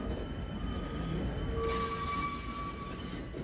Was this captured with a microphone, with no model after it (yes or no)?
yes